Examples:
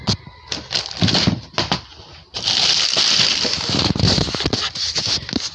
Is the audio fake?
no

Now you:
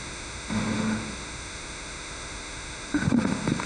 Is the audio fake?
yes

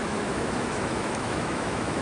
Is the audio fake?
yes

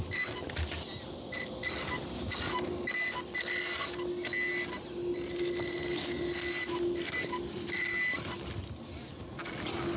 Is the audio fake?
no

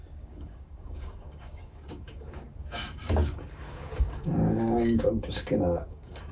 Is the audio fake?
yes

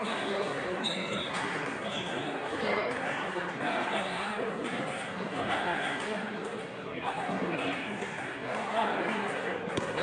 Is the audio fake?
yes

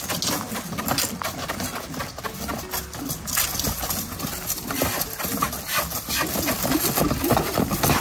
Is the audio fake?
no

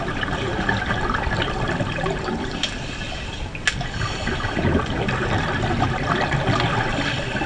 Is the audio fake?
no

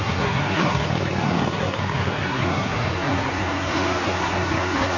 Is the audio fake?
yes